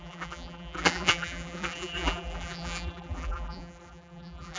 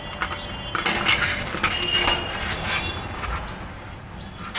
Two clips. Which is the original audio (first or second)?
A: second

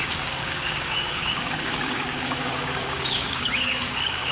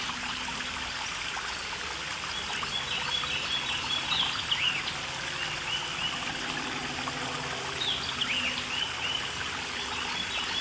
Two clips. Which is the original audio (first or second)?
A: second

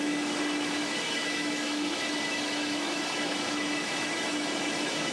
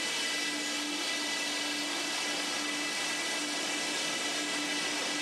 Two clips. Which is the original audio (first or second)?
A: second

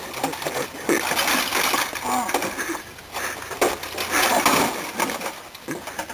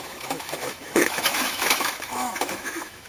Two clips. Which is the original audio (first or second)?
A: first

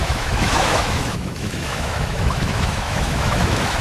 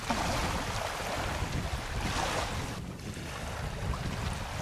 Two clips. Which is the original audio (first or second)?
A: second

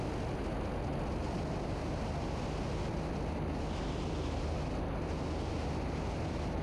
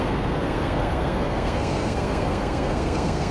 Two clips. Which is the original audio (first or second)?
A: first